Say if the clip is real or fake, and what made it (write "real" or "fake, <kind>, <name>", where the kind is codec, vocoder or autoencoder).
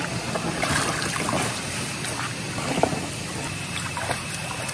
real